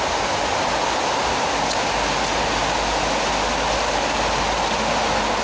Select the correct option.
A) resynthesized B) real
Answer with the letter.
B